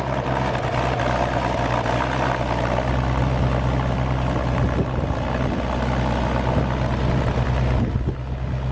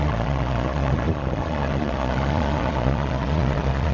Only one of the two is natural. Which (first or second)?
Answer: first